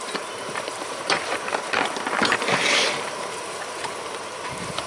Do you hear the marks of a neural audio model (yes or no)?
yes